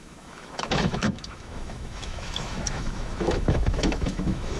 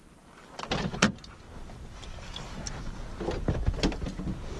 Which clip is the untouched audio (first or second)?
second